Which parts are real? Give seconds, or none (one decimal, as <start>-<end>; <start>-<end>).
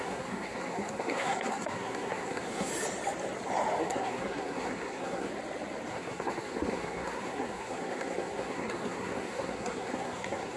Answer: 2.7-3.8; 5.3-5.9